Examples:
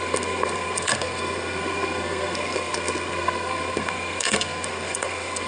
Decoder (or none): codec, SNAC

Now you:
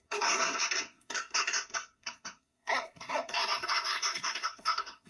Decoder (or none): codec, SNAC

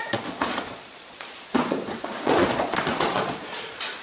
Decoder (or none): vocoder, Vocos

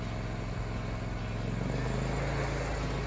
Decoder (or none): none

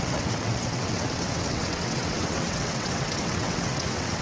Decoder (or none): vocoder, WaveNeXt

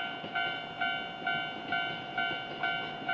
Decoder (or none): none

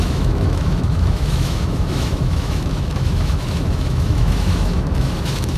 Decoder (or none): autoencoder, DAC-VAE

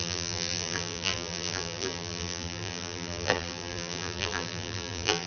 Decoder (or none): vocoder, BigVGAN v2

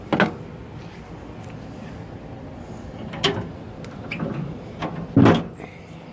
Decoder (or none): none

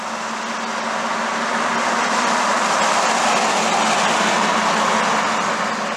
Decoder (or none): none